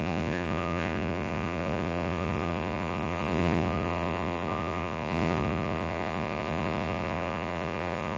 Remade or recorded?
remade